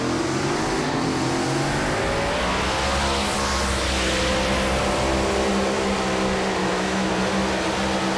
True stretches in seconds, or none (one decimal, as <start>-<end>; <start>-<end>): 0.0-6.6; 7.1-8.2